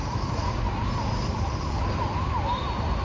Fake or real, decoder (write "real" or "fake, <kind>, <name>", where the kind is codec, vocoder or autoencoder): fake, vocoder, BigVGAN v2